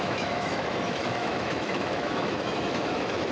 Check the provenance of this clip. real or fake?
fake